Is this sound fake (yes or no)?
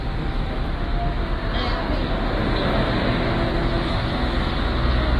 no